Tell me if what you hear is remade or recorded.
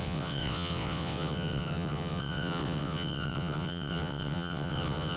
remade